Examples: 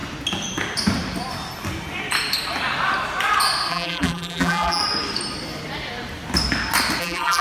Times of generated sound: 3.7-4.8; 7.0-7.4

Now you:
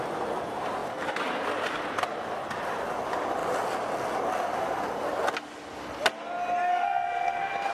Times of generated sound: 6.7-7.7

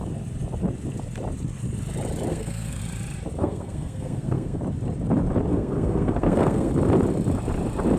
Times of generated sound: 2.3-2.8; 3.4-4.6; 5.5-6.7

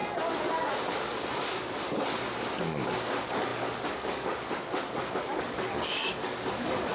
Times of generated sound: 2.6-6.9

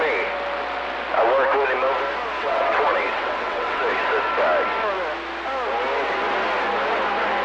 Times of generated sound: 2.4-3.8

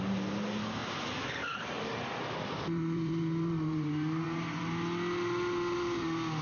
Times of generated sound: 0.8-4.6